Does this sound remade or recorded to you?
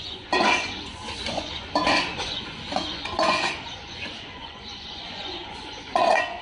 remade